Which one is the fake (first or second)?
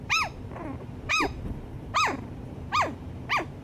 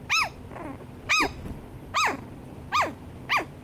first